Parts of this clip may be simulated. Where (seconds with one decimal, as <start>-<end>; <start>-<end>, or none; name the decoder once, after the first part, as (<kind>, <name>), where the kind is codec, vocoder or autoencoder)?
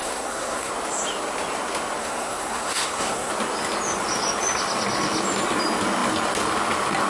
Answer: 0.0-0.7 (codec, SNAC); 2.0-3.3